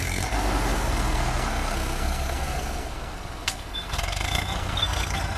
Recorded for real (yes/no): no